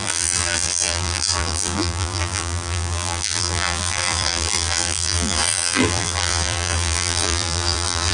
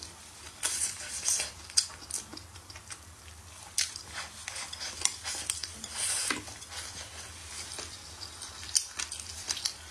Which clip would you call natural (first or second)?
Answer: second